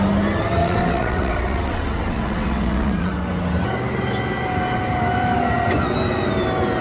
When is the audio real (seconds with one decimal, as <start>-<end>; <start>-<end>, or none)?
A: 0.0-0.6; 3.1-6.8

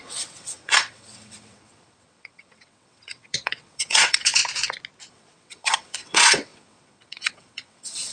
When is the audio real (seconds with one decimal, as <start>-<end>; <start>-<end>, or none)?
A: 4.4-5.1

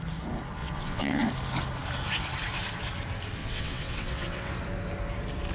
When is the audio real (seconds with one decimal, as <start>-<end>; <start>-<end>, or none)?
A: 0.0-0.6; 1.2-3.4; 4.5-5.5